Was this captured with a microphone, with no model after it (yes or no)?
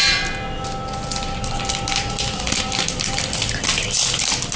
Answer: yes